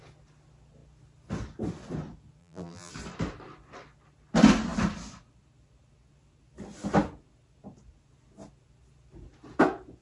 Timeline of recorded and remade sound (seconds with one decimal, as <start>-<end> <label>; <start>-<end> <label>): 0.0-2.4 recorded; 2.4-2.9 remade; 2.9-10.0 recorded